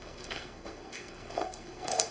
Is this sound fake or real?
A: fake